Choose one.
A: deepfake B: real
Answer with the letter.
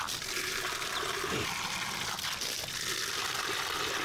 B